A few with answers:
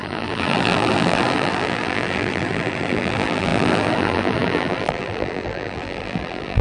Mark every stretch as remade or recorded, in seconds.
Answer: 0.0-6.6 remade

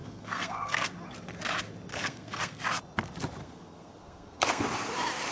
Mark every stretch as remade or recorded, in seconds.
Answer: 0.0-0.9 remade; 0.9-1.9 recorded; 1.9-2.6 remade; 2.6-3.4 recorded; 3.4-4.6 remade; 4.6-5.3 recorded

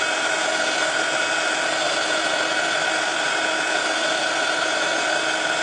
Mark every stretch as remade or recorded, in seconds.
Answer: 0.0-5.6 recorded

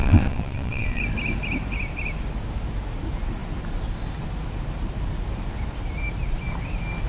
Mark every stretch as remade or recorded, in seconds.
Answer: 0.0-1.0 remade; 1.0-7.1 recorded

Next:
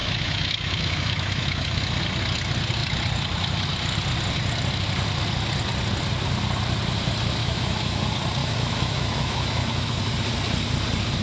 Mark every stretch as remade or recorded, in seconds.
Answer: 0.0-1.8 remade; 1.8-7.4 recorded; 7.4-8.0 remade; 8.0-8.4 recorded; 8.4-10.0 remade; 10.0-11.2 recorded